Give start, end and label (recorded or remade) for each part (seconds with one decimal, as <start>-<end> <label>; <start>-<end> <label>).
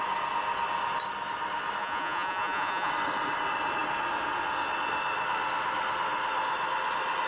0.0-1.8 recorded; 1.8-2.9 remade; 2.9-7.3 recorded